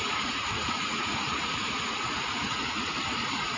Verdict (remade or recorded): remade